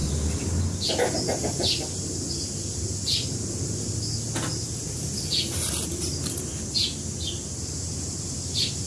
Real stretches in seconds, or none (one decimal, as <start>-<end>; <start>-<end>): 0.0-8.9